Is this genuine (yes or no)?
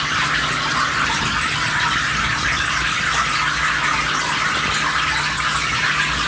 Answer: yes